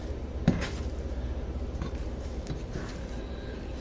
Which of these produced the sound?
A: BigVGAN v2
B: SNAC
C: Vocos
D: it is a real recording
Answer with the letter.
A